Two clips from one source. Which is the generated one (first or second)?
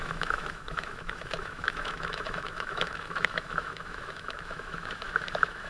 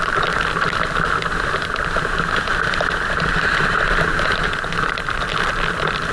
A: first